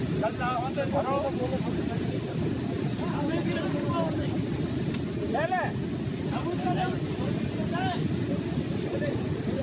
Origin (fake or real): real